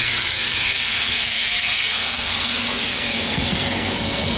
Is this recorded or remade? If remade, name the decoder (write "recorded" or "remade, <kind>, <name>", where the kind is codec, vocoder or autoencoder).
remade, codec, SNAC